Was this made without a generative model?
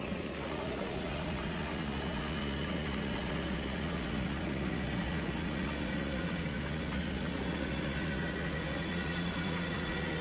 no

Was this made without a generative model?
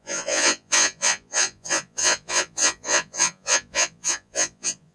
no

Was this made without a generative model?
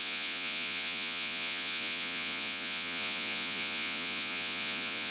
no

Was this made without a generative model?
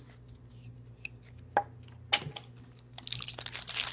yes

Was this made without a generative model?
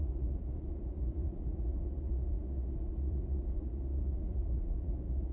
no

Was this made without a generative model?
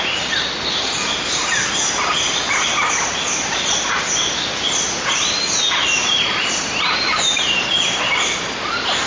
yes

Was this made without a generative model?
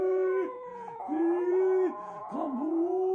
no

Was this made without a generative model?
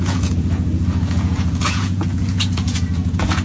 no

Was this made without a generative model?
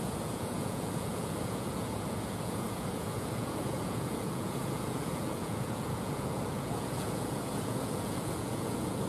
no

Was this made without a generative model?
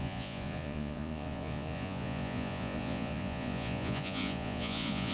no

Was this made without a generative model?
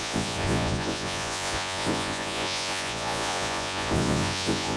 no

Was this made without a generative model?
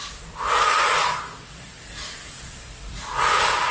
yes